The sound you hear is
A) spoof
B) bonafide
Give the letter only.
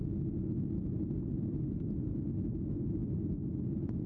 B